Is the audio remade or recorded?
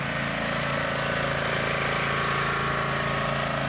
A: recorded